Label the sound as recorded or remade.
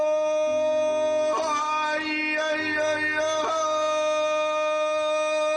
recorded